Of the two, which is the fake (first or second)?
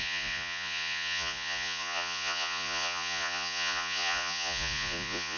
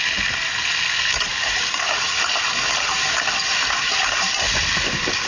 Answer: first